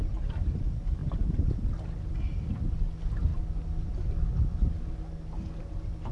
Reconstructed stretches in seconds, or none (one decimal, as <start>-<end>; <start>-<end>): none